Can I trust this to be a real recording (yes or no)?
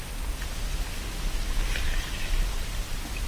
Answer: yes